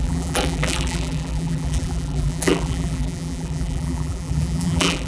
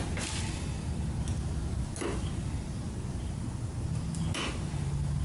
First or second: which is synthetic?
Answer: first